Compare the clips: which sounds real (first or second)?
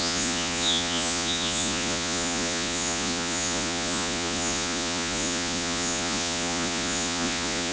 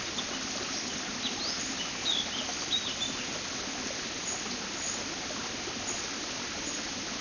second